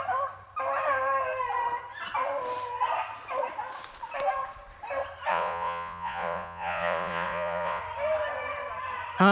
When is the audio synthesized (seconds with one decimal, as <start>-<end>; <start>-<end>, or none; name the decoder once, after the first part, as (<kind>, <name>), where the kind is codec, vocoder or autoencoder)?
5.3-7.8 (vocoder, Vocos)